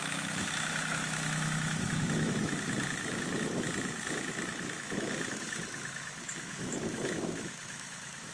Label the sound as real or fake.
fake